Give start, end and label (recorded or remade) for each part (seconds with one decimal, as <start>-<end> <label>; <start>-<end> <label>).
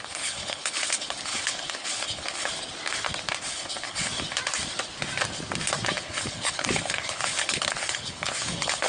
0.0-2.5 remade; 2.5-3.4 recorded; 3.4-4.1 remade; 4.1-6.0 recorded; 6.0-8.9 remade